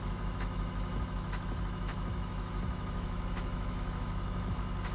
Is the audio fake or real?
fake